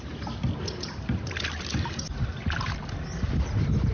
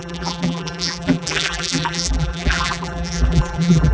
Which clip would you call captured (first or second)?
first